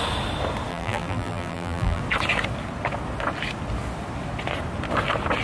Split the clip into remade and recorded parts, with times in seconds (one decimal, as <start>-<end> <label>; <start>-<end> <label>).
0.0-0.7 recorded; 0.7-2.0 remade; 2.0-5.4 recorded